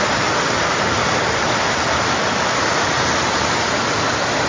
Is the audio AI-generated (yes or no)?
no